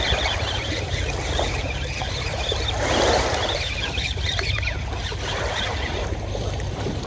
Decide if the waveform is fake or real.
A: fake